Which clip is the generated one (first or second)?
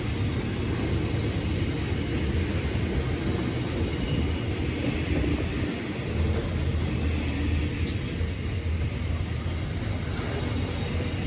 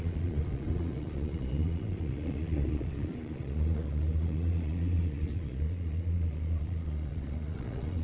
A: second